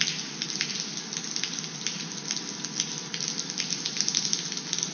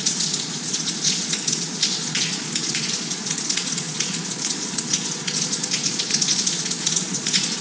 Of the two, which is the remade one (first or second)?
second